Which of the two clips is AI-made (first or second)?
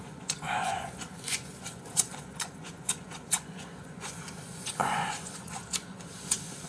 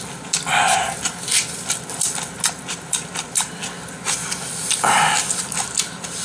first